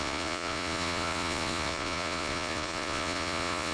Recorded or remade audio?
remade